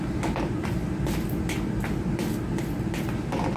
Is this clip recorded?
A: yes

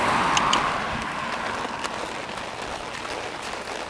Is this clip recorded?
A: yes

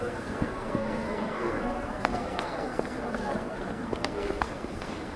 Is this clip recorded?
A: no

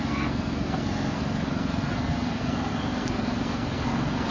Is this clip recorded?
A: no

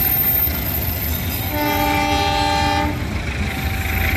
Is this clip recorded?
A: yes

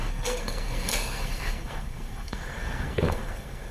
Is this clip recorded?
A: no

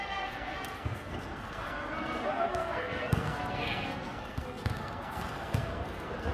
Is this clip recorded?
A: no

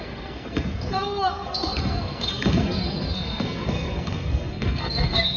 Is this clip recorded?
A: no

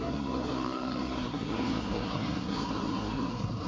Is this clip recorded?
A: no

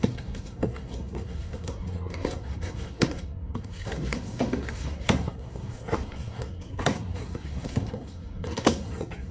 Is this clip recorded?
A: no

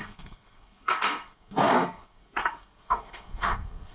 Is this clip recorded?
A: no